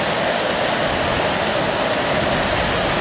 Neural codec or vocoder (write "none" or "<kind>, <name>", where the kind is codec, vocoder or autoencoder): none